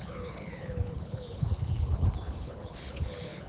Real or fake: fake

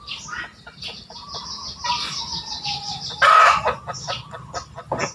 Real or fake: real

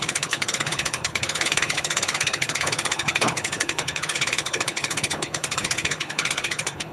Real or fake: fake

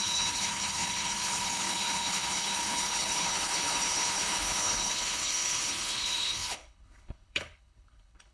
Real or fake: fake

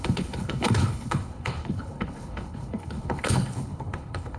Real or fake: fake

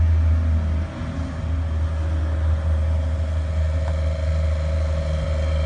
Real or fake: real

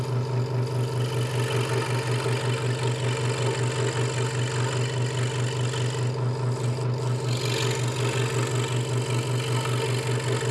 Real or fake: real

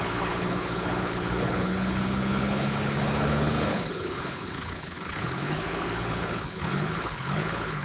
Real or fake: fake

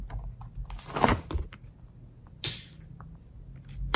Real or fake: real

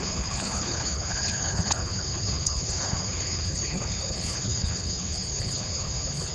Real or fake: fake